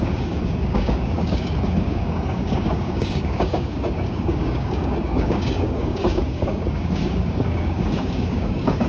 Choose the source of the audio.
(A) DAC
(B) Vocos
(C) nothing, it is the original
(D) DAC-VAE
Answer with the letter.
A